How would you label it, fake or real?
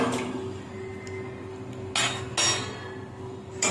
real